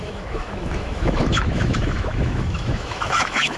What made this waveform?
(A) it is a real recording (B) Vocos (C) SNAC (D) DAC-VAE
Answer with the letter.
D